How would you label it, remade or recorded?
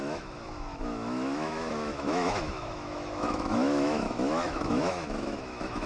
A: remade